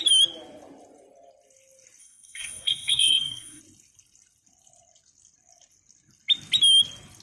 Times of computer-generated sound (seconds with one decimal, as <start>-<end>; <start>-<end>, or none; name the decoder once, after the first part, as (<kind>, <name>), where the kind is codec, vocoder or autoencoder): 2.0-3.6 (codec, SNAC)